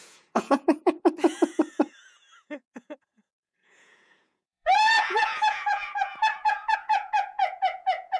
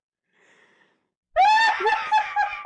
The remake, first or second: first